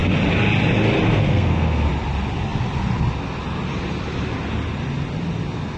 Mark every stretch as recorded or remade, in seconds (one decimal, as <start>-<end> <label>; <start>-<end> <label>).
0.0-1.1 recorded; 1.1-1.9 remade; 1.9-5.8 recorded